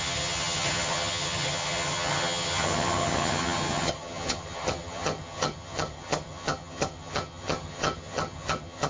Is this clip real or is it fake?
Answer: fake